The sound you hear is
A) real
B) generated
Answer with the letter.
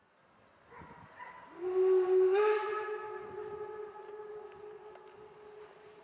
A